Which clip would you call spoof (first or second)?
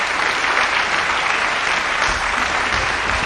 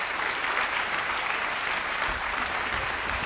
second